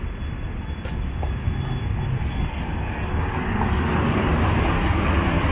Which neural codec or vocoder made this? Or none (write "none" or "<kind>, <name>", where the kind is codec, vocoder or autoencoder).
none